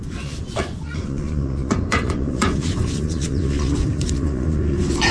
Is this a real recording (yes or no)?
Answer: no